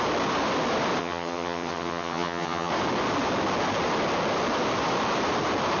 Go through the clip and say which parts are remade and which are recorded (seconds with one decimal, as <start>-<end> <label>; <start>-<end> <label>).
0.0-1.0 recorded; 1.0-2.7 remade; 2.7-5.8 recorded